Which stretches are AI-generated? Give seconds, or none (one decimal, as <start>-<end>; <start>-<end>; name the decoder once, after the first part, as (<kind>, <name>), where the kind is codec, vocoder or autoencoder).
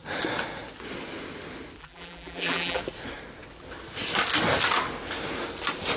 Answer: 1.8-2.8 (vocoder, BigVGAN v2)